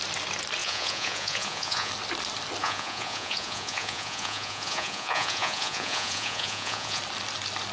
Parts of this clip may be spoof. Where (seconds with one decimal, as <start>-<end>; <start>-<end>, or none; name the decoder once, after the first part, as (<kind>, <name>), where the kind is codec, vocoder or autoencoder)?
0.6-1.9 (vocoder, Vocos); 2.6-7.0